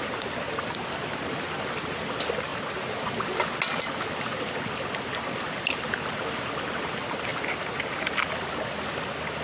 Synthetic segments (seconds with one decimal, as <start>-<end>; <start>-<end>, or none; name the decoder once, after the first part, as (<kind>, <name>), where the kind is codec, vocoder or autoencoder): none